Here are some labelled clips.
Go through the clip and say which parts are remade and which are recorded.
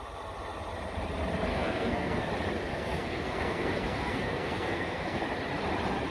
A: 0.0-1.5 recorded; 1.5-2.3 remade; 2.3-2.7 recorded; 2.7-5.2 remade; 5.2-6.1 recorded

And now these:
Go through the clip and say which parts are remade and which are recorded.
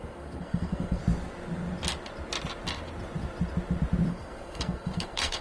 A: 0.0-1.0 remade; 1.0-4.1 recorded; 4.1-5.4 remade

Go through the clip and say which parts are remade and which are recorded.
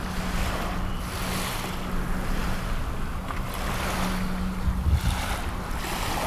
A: 0.0-6.3 recorded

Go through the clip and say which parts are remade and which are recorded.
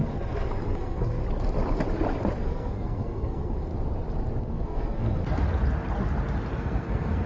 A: 0.0-1.2 remade; 1.2-2.4 recorded; 2.4-3.7 remade; 3.7-4.4 recorded; 4.4-5.2 remade; 5.2-6.5 recorded; 6.5-7.3 remade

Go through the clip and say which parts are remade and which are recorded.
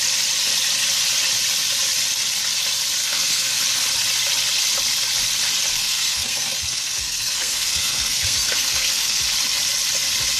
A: 0.0-3.0 recorded; 3.0-3.6 remade; 3.6-5.7 recorded; 5.7-9.2 remade; 9.2-10.4 recorded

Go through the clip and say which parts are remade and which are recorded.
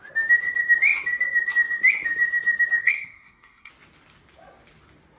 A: 0.0-2.8 recorded; 2.8-3.7 remade; 3.7-5.2 recorded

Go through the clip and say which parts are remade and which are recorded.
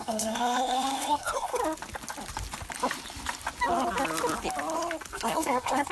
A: 0.0-1.6 remade; 1.6-5.1 recorded; 5.1-5.9 remade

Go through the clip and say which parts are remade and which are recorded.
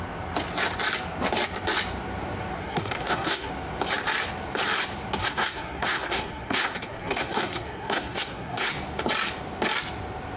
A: 0.0-2.6 recorded; 2.6-3.5 remade; 3.5-5.2 recorded; 5.2-8.7 remade; 8.7-10.4 recorded